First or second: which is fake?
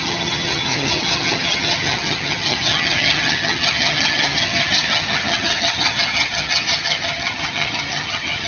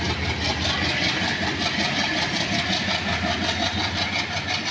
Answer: first